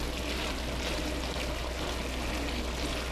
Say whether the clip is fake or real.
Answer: real